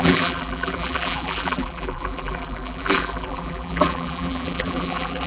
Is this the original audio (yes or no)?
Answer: no